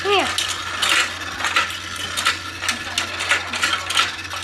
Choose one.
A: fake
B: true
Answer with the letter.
B